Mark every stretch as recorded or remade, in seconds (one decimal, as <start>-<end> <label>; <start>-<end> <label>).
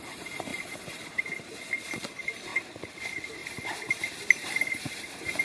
0.0-0.5 recorded; 0.5-1.4 remade; 1.4-3.4 recorded; 3.4-5.4 remade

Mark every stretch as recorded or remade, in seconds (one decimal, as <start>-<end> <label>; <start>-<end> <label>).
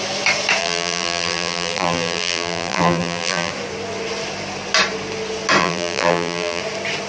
0.0-0.6 recorded; 0.6-3.5 remade; 3.5-5.6 recorded; 5.6-6.6 remade; 6.6-7.1 recorded